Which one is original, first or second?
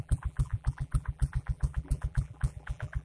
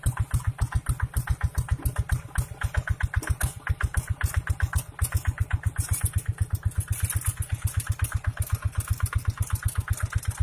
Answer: second